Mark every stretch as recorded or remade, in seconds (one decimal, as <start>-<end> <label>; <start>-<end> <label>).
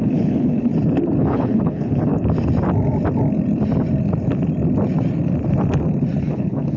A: 0.0-0.7 remade; 0.7-1.2 recorded; 1.2-2.1 remade; 2.1-6.2 recorded; 6.2-6.8 remade